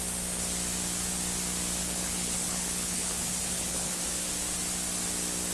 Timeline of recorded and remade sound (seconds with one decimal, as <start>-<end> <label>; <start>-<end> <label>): 0.0-1.8 recorded; 1.8-4.0 remade; 4.0-5.5 recorded

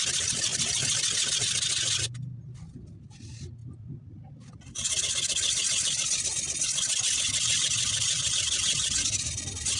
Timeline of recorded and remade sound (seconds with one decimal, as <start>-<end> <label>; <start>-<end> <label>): 0.0-9.8 recorded

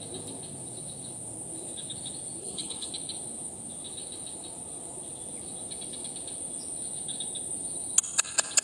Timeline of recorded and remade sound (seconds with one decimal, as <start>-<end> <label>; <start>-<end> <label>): 0.0-2.4 recorded; 2.4-2.9 remade; 2.9-8.6 recorded

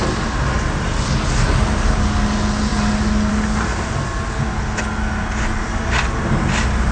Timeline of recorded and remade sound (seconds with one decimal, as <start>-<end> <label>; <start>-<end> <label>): 0.0-6.9 recorded

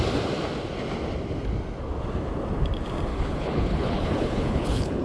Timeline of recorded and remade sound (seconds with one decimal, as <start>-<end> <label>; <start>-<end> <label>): 0.0-3.1 recorded; 3.1-5.0 remade

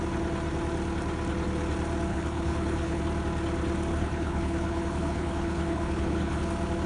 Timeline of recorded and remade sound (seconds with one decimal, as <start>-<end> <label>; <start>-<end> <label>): 0.0-2.1 recorded; 2.1-3.0 remade; 3.0-3.9 recorded; 3.9-6.5 remade; 6.5-6.9 recorded

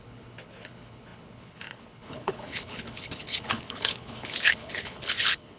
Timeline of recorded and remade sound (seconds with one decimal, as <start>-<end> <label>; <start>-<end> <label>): 0.0-5.6 remade